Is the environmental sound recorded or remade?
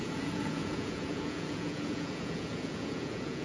remade